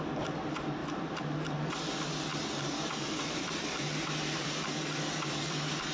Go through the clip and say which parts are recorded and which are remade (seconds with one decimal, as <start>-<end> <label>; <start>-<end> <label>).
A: 0.0-0.8 recorded; 0.8-1.7 remade; 1.7-2.3 recorded; 2.3-4.7 remade; 4.7-5.9 recorded